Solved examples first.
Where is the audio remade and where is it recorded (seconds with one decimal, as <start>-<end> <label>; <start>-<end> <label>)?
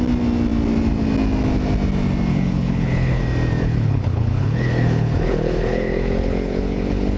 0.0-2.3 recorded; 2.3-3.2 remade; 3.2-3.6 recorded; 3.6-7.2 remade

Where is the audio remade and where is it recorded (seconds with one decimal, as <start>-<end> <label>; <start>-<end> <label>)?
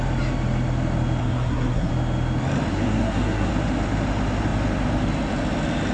0.0-1.2 recorded; 1.2-1.9 remade; 1.9-2.7 recorded; 2.7-3.5 remade; 3.5-5.9 recorded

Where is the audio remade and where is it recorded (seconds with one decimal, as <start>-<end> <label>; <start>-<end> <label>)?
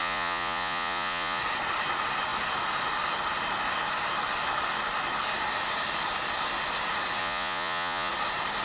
0.0-1.4 remade; 1.4-7.2 recorded; 7.2-8.1 remade; 8.1-8.6 recorded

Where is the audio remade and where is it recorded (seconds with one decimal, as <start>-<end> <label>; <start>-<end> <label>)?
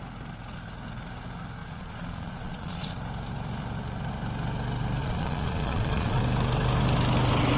0.0-1.6 recorded; 1.6-2.9 remade; 2.9-5.0 recorded; 5.0-6.2 remade; 6.2-7.6 recorded